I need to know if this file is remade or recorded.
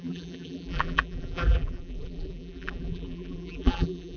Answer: remade